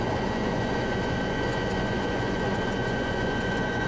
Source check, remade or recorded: remade